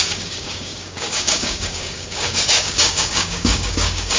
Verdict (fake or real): fake